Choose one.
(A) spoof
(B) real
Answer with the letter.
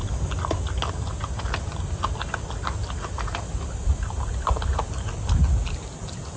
B